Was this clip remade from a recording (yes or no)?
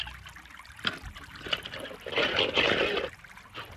no